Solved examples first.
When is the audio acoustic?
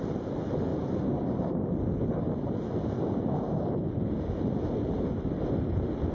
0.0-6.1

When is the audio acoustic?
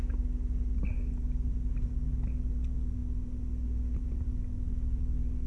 0.0-5.5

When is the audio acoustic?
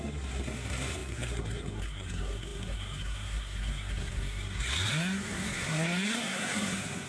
none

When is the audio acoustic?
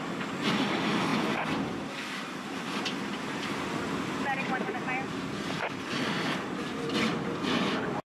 0.0-8.1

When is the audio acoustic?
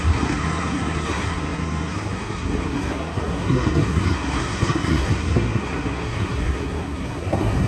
none